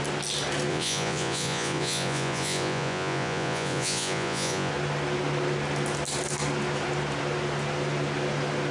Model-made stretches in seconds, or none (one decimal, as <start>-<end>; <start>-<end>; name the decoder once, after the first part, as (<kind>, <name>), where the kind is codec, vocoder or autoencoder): 0.7-4.7 (vocoder, Vocos)